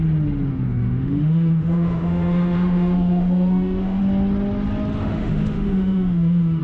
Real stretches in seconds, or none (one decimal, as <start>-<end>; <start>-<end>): 0.0-0.5; 4.0-5.0